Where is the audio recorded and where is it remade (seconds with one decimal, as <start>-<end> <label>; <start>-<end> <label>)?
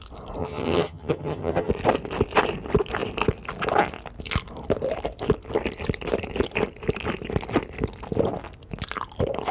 0.0-0.4 recorded; 0.4-1.7 remade; 1.7-9.5 recorded